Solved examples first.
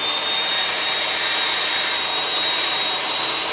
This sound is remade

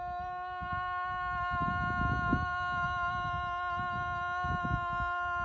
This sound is recorded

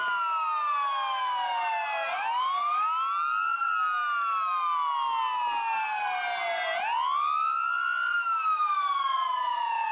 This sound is recorded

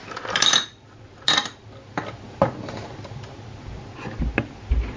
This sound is recorded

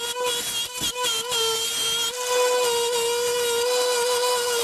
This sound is recorded